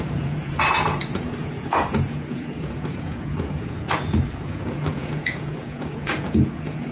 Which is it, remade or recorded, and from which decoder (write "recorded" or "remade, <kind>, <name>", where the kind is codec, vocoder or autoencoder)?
remade, vocoder, Vocos